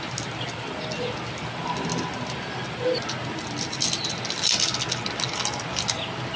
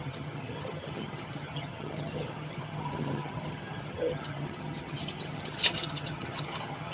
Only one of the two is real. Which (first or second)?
first